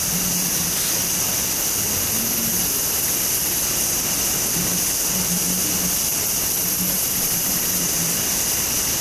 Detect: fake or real real